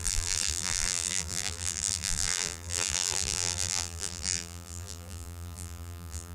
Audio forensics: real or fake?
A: fake